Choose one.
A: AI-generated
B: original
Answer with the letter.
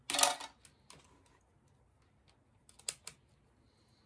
B